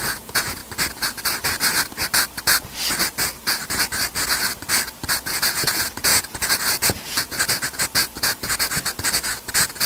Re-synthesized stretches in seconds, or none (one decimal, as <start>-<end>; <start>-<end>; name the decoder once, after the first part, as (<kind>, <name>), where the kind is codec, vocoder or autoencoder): 0.0-0.6 (vocoder, Vocos); 5.2-9.9